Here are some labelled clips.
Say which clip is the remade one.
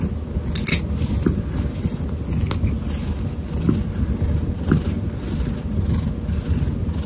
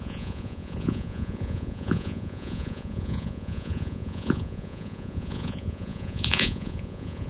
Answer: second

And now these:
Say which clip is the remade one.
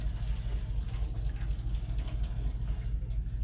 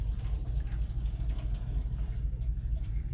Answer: second